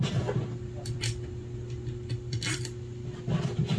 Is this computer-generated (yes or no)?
no